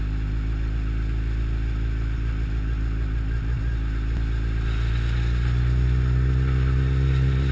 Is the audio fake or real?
real